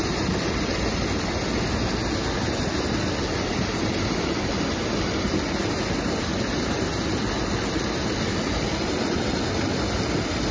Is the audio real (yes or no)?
yes